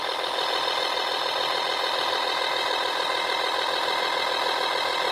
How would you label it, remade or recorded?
recorded